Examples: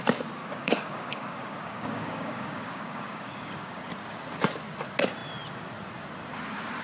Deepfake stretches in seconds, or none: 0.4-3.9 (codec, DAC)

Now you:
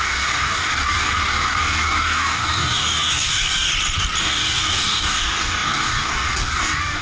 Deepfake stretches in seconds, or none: 0.0-3.7 (codec, DAC); 4.2-7.0

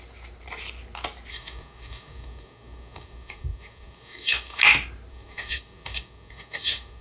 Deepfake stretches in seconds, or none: 1.3-4.6 (codec, DAC); 5.1-7.0